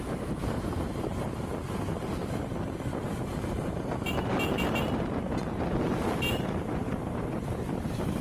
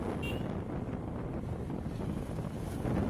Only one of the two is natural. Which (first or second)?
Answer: second